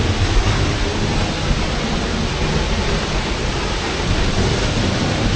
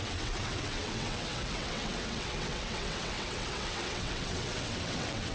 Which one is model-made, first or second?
second